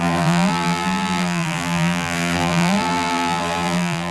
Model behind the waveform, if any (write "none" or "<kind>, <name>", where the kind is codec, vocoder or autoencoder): vocoder, BigVGAN v2